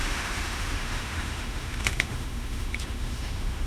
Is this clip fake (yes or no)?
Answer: yes